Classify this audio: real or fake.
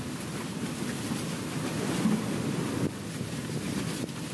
real